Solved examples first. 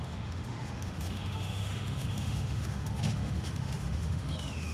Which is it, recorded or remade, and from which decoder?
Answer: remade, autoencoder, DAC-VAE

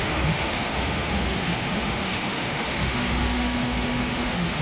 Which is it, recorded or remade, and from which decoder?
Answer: remade, autoencoder, DAC-VAE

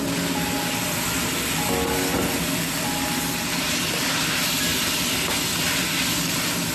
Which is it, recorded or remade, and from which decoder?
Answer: recorded